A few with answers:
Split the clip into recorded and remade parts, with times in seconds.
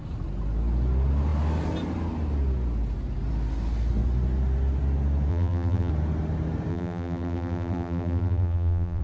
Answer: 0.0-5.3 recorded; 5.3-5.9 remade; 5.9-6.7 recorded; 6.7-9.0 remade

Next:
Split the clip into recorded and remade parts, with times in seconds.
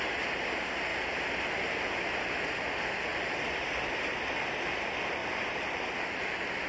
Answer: 0.0-0.9 recorded; 0.9-2.2 remade; 2.2-3.1 recorded; 3.1-4.1 remade; 4.1-5.2 recorded; 5.2-6.1 remade; 6.1-6.7 recorded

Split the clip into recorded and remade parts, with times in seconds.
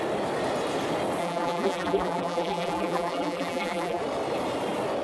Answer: 0.0-1.2 recorded; 1.2-4.0 remade; 4.0-5.0 recorded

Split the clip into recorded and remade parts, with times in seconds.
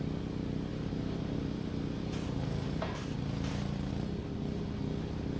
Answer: 0.0-0.7 recorded; 0.7-3.9 remade; 3.9-5.4 recorded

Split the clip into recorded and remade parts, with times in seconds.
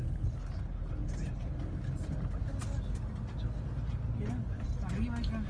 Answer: 0.0-5.5 recorded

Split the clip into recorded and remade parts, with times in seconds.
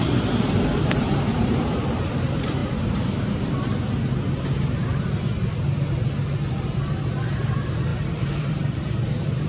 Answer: 0.0-4.9 remade; 4.9-7.5 recorded; 7.5-9.5 remade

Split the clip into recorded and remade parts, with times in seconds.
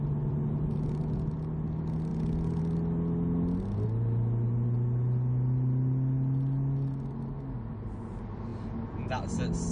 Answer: 0.0-9.7 recorded